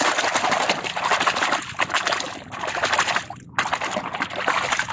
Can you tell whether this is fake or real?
real